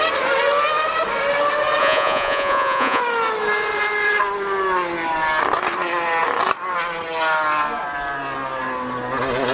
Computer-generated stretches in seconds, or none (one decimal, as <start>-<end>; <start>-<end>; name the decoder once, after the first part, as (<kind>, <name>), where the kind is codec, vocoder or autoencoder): 1.8-3.0 (vocoder, Vocos)